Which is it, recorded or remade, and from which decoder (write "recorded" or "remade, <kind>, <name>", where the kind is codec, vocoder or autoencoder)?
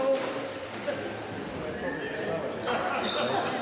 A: recorded